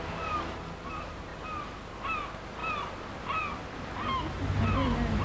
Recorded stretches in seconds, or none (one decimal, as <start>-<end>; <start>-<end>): 0.0-5.2